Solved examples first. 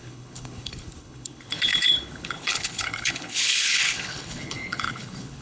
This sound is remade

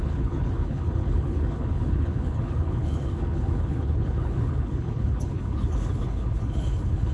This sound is remade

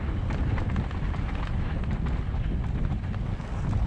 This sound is recorded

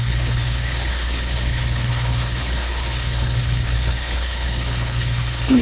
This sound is remade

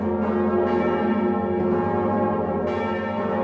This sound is recorded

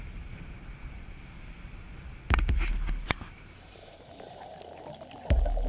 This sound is recorded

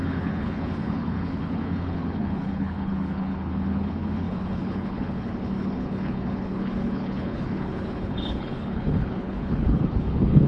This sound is remade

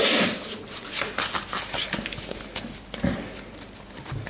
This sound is recorded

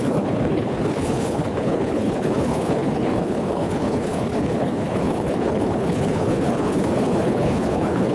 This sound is remade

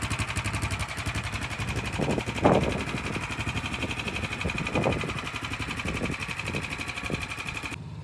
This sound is recorded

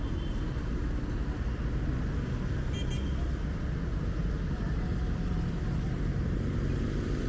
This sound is recorded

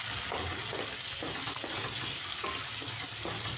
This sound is recorded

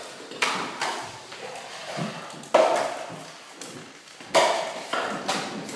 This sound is recorded